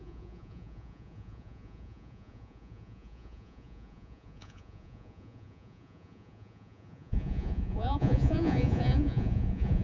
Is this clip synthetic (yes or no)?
yes